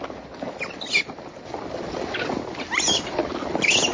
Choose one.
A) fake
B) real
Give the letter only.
B